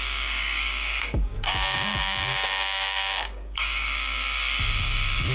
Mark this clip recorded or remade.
remade